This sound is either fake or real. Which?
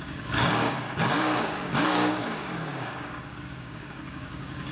fake